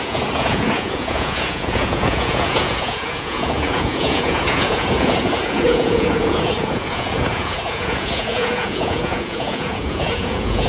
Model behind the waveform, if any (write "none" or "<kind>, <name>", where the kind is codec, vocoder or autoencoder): vocoder, Vocos